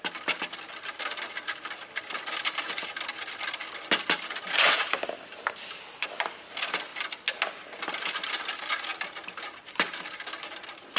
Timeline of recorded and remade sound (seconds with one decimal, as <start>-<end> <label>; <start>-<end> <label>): 0.0-11.0 recorded